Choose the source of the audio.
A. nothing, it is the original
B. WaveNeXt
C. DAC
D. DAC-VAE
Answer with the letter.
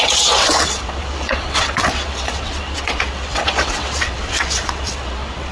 B